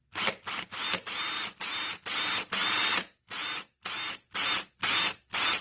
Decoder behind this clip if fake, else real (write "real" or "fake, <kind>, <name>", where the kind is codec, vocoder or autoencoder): real